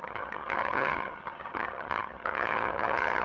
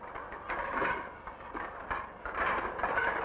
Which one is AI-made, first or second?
first